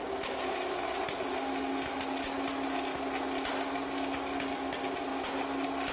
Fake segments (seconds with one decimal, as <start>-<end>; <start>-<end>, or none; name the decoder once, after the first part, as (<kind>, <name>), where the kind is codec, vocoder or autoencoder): none